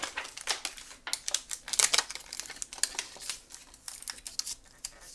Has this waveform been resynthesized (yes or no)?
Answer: no